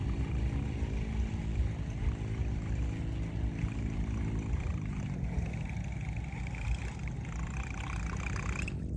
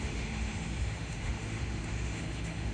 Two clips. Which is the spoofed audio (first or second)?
second